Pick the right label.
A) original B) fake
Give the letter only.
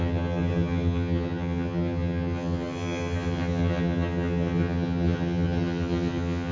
B